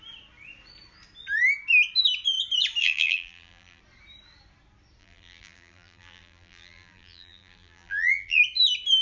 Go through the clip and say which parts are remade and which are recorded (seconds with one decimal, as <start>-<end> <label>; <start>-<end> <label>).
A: 0.0-2.8 recorded; 2.8-3.8 remade; 3.8-5.0 recorded; 5.0-8.4 remade; 8.4-9.0 recorded